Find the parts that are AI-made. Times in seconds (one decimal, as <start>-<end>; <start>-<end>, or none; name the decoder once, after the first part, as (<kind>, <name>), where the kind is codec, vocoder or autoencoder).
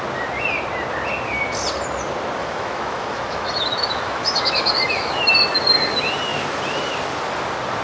2.4-5.3 (autoencoder, DAC-VAE)